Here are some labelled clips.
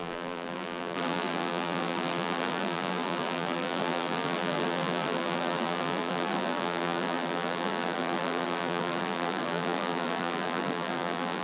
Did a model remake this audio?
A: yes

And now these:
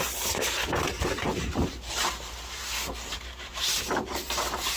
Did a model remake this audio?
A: yes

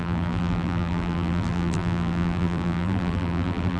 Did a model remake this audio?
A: yes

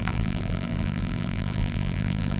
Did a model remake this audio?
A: yes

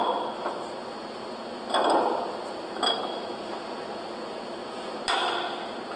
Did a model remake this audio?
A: no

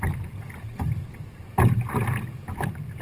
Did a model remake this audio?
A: no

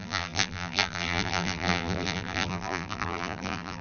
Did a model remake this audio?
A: yes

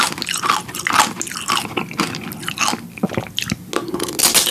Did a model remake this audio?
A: no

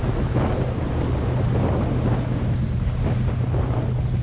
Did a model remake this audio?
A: no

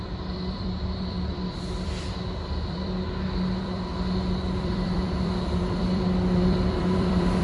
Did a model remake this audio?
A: yes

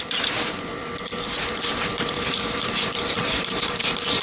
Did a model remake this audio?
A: yes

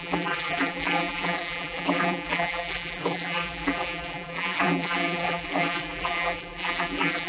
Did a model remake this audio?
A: yes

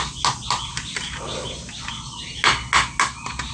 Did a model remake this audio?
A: no